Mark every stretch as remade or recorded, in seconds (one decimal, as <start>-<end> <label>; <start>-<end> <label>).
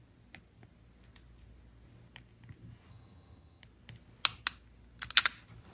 0.0-2.9 recorded; 2.9-3.6 remade; 3.6-5.7 recorded